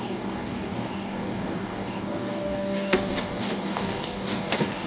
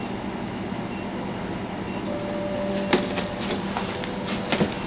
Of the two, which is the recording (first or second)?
second